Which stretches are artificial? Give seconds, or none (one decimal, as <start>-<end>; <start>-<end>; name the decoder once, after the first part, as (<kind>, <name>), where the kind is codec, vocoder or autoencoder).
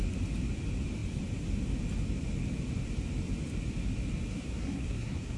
4.3-5.4 (codec, SNAC)